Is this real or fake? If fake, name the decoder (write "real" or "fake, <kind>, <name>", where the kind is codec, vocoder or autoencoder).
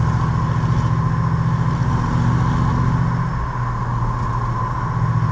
real